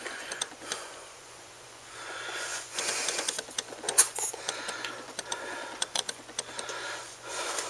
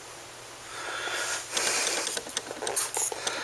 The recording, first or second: second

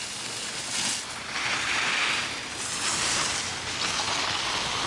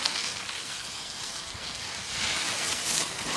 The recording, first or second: first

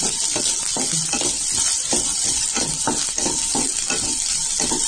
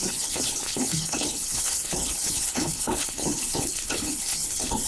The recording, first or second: first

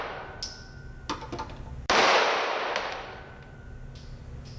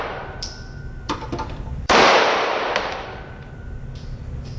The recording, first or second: first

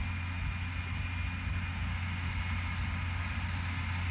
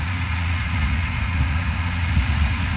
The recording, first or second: first